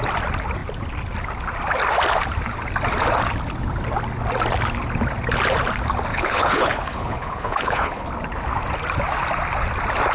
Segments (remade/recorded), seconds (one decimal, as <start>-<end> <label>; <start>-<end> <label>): 0.0-6.1 recorded; 6.1-8.1 remade; 8.1-10.1 recorded